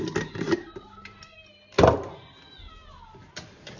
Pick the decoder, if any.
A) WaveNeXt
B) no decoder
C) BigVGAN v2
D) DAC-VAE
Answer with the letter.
B